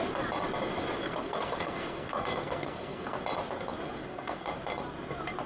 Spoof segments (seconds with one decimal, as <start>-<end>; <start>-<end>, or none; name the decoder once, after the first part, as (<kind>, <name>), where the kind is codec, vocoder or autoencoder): 1.0-3.2 (codec, SNAC); 4.0-4.5